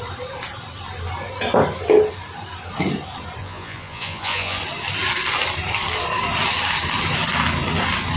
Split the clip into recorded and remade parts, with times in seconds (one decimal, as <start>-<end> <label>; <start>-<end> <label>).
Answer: 0.0-3.4 recorded; 3.4-4.6 remade; 4.6-8.2 recorded